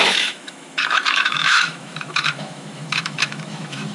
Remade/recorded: remade